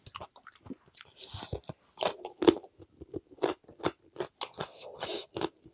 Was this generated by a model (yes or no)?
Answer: no